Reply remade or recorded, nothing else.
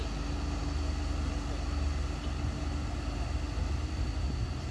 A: recorded